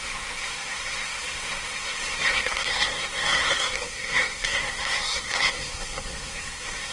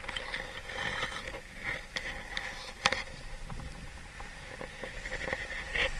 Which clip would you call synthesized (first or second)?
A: first